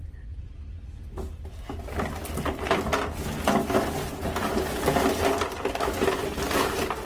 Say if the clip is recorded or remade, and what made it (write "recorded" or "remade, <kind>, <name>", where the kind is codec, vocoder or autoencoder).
recorded